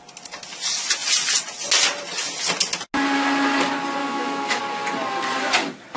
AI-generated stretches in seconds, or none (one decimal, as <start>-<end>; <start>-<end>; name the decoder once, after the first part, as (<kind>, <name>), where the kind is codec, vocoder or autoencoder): 4.0-4.6 (autoencoder, DAC-VAE)